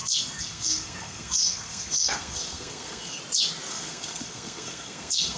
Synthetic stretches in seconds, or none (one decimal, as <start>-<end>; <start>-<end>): 0.0-3.2; 3.7-5.4